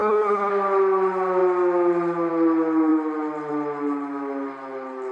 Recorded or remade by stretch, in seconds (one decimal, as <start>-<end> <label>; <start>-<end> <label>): 0.0-0.5 remade; 0.5-5.1 recorded